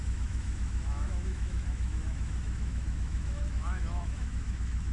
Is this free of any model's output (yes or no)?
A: no